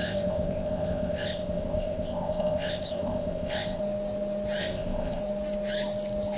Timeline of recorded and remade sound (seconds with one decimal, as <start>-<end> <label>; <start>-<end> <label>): 0.0-3.8 remade; 3.8-4.6 recorded; 4.6-5.2 remade; 5.2-6.4 recorded